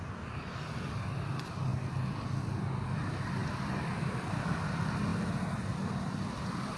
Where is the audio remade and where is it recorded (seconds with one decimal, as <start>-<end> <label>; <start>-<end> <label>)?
0.0-6.8 recorded